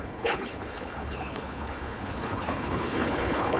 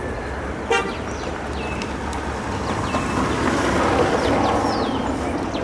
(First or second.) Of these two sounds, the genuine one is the second